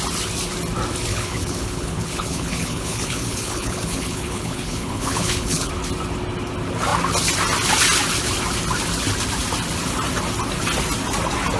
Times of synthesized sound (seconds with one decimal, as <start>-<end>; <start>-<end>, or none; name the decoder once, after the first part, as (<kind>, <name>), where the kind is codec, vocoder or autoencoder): 1.1-5.7 (codec, HILCodec)